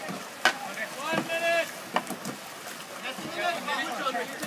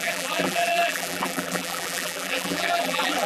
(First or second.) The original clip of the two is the first